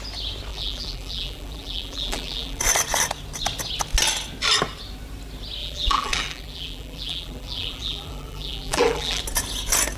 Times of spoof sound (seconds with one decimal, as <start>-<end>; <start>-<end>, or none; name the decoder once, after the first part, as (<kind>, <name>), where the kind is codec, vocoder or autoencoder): 0.5-2.6 (vocoder, BigVGAN v2); 5.6-9.2